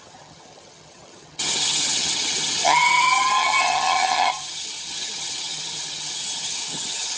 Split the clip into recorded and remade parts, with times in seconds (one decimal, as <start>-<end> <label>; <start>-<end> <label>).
0.0-7.2 remade